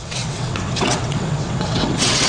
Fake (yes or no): yes